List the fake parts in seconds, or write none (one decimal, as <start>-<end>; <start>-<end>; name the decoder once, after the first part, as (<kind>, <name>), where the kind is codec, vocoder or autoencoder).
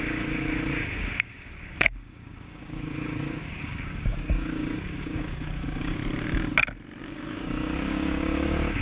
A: 0.0-6.0 (codec, DAC); 7.0-8.8